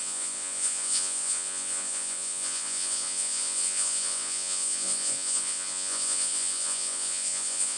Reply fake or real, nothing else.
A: fake